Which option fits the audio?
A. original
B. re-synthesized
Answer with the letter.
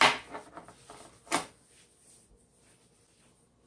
A